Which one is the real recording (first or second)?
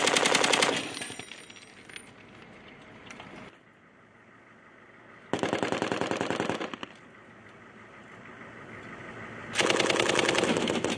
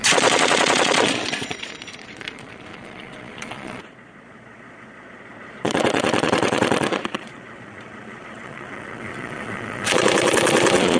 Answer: first